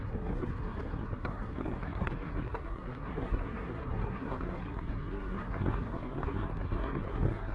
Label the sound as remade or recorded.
remade